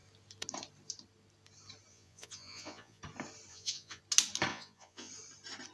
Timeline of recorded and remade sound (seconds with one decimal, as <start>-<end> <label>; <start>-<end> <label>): 0.0-1.9 recorded; 1.9-3.0 remade; 3.0-3.5 recorded; 3.5-4.0 remade; 4.0-4.5 recorded; 4.5-5.1 remade; 5.1-5.7 recorded